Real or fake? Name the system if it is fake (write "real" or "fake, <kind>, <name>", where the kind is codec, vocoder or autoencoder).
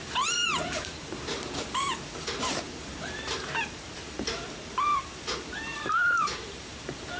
fake, vocoder, BigVGAN v2